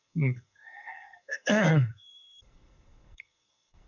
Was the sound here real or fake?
fake